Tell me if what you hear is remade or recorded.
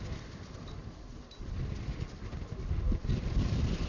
recorded